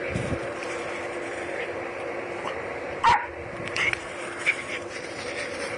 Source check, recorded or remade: remade